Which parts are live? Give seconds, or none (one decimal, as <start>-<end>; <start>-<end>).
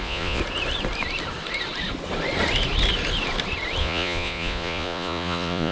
0.4-3.8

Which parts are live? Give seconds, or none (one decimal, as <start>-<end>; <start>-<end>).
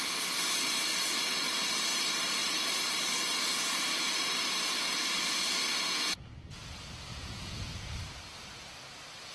0.0-5.7; 6.3-7.1; 7.8-9.3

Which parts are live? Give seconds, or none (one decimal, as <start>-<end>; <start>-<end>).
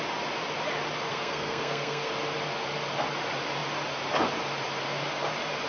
0.0-1.1; 2.1-5.7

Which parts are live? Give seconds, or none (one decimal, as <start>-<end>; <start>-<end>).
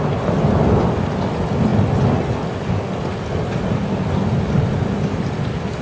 0.0-5.8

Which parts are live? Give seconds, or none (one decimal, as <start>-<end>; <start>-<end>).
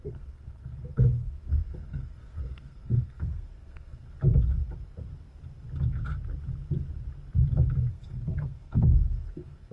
4.0-7.9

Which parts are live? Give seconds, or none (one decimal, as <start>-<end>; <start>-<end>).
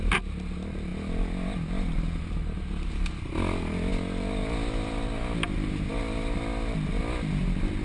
0.0-7.8